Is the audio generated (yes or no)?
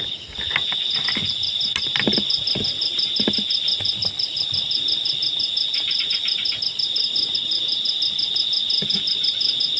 no